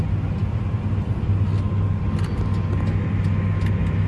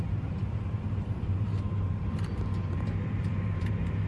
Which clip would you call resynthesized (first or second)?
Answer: second